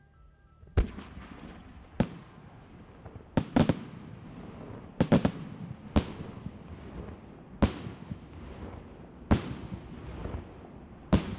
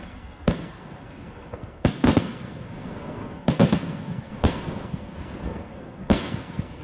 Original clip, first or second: first